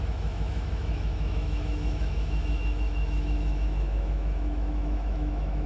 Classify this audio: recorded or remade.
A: remade